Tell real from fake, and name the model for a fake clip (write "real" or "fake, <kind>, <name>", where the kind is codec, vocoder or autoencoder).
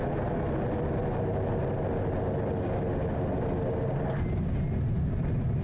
real